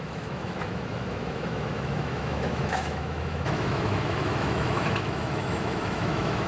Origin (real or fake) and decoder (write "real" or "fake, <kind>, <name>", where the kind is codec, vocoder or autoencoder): fake, autoencoder, DAC-VAE